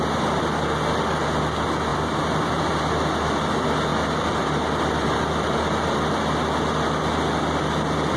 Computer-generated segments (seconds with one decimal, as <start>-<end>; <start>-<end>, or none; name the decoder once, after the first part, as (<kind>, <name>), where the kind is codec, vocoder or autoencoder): 1.9-2.6 (vocoder, BigVGAN v2); 3.9-6.1